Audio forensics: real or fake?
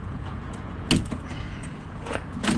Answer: fake